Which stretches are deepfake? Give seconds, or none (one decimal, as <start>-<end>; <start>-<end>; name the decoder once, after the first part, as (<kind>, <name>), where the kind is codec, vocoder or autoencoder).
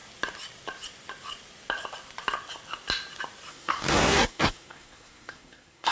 3.5-5.9 (codec, SNAC)